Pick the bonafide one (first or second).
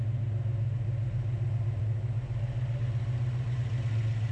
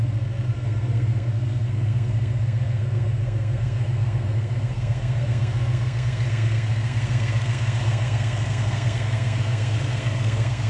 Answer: first